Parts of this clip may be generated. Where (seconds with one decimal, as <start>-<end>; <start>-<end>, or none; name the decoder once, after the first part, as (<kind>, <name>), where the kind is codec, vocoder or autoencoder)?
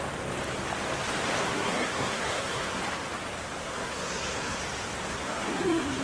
1.4-2.8 (codec, SNAC); 3.6-4.6; 5.1-6.0